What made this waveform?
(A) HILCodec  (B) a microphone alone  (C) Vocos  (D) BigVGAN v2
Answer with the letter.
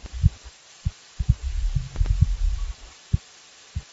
D